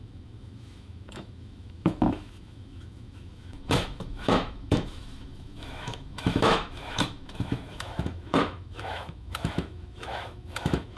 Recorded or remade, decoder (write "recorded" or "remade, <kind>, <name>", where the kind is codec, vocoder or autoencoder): remade, autoencoder, DAC-VAE